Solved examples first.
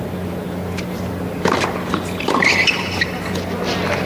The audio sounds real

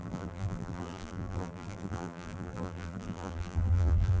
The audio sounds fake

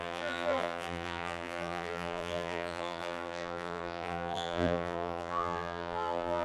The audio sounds fake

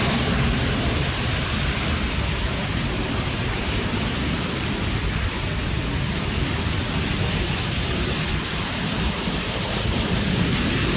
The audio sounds fake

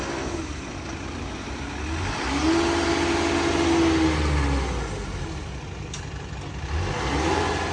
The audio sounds real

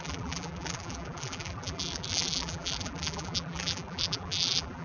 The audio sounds fake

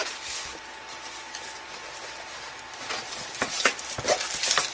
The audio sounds real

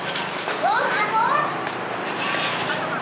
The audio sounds fake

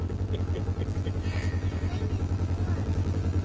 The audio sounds fake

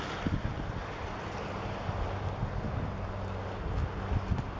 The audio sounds real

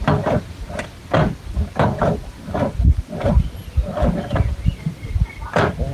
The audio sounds real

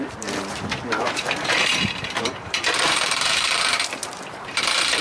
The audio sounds fake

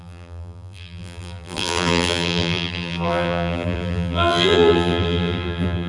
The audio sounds fake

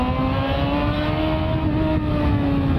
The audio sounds real